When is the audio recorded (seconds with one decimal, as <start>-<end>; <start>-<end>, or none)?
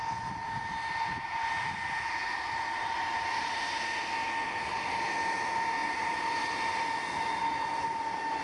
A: 0.0-5.8; 7.4-8.4